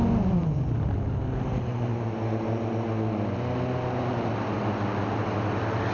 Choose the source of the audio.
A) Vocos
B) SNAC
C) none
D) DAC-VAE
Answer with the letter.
C